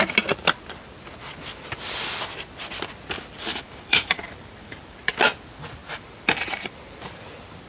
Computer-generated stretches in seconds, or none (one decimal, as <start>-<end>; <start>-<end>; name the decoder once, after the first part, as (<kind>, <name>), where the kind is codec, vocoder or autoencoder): 3.5-5.1 (vocoder, BigVGAN v2); 5.8-7.3